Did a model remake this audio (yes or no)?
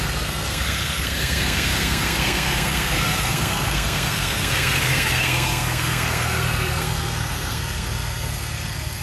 yes